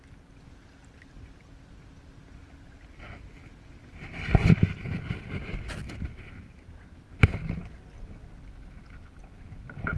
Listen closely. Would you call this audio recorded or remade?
recorded